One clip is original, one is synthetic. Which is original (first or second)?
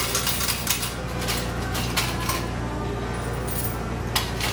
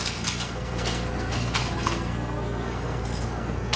first